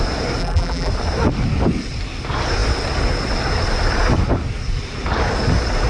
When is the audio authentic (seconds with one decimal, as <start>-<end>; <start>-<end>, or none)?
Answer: 0.0-0.4; 0.9-5.9

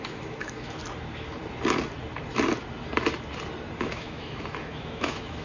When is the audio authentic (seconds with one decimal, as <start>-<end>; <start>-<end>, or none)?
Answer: 0.8-3.8

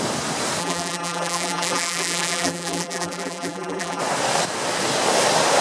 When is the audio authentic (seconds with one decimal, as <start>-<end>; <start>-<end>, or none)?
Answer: 0.0-0.6; 4.0-5.6